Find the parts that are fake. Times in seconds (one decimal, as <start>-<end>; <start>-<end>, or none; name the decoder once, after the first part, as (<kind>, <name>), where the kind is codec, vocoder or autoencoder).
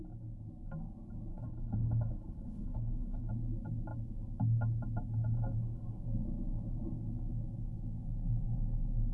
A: 1.3-3.3 (codec, HILCodec)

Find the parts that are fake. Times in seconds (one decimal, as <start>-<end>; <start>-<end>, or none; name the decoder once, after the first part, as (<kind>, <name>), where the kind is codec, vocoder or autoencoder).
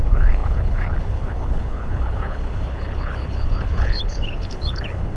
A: 0.0-5.2 (codec, HILCodec)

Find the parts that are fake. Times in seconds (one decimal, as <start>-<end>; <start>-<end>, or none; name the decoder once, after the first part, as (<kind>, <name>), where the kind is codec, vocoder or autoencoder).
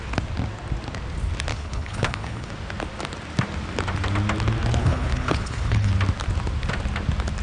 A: 1.5-2.5 (codec, HILCodec); 4.8-5.9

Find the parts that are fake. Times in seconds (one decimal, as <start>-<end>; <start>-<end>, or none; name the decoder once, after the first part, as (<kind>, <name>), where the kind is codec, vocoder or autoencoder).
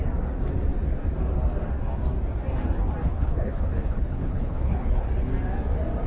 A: 3.0-5.1 (codec, HILCodec)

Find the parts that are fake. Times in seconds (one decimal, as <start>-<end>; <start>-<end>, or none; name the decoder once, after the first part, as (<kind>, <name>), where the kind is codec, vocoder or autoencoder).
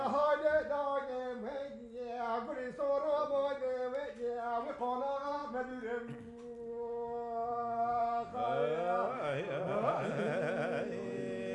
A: none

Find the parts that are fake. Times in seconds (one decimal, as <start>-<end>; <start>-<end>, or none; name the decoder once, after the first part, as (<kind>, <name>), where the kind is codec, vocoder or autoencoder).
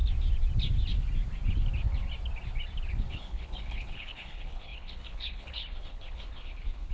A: 3.1-6.9 (codec, HILCodec)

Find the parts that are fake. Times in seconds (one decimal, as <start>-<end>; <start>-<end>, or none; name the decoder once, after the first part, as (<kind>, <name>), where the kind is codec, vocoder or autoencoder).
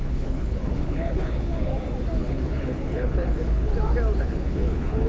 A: 0.0-1.7 (codec, HILCodec); 2.2-3.7; 4.2-5.1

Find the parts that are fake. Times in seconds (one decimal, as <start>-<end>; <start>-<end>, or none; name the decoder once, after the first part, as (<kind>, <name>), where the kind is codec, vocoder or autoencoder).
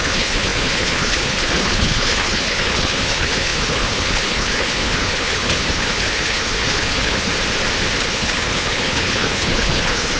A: 0.0-7.3 (codec, HILCodec); 8.0-10.2